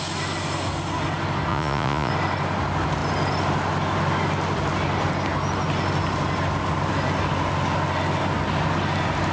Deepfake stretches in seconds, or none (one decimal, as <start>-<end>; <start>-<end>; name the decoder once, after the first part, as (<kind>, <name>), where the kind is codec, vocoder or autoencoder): 1.5-2.1 (vocoder, Vocos)